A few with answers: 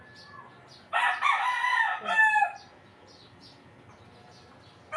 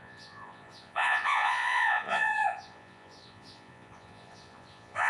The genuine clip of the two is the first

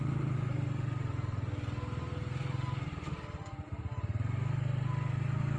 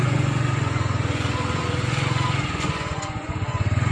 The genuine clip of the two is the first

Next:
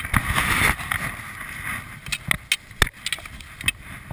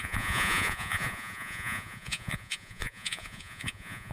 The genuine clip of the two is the first